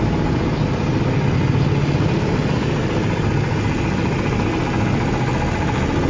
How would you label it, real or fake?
real